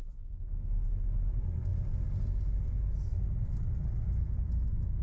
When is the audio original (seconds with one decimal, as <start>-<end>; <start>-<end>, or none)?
0.0-5.0